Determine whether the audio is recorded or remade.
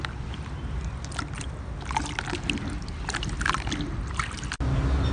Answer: recorded